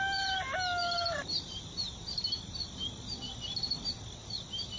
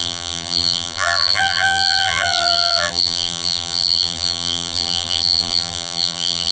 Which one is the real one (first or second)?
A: first